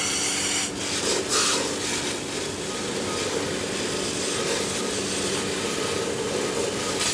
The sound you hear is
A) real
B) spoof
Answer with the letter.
A